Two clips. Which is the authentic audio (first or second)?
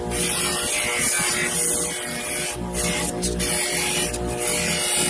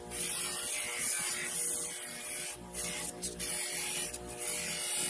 first